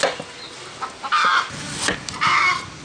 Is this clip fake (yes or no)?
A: no